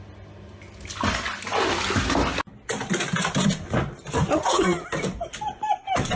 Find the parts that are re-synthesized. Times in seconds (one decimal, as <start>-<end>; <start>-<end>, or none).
none